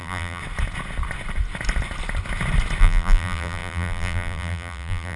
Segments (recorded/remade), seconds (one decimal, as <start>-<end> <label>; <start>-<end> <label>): 0.0-0.4 remade; 0.4-2.8 recorded; 2.8-5.2 remade